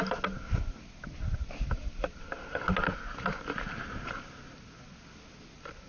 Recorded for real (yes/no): yes